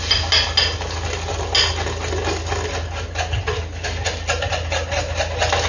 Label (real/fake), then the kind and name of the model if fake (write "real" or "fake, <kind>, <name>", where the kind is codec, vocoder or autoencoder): real